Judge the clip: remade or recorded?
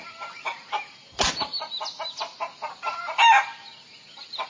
recorded